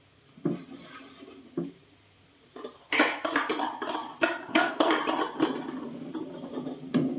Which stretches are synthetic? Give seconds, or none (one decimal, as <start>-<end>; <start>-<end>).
4.5-5.0